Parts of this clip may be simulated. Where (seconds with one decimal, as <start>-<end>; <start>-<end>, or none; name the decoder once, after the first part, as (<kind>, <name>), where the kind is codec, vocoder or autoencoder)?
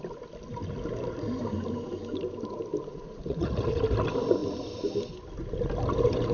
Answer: 2.9-3.8 (vocoder, Vocos)